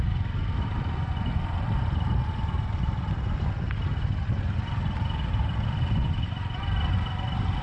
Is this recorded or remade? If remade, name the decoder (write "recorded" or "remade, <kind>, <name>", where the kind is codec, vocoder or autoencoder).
recorded